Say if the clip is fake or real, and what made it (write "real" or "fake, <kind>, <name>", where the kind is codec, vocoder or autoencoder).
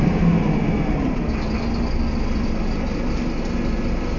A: real